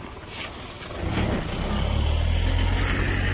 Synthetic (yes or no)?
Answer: no